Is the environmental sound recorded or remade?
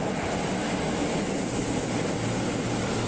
recorded